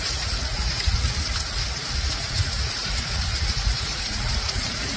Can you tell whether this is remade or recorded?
remade